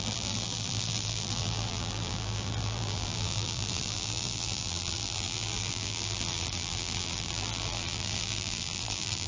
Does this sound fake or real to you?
fake